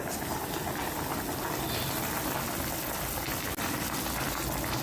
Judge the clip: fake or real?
real